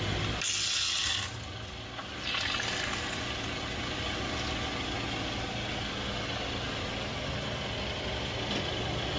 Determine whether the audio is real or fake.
real